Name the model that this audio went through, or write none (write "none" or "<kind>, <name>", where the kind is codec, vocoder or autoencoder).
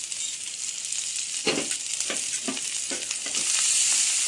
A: none